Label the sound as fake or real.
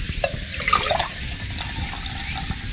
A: real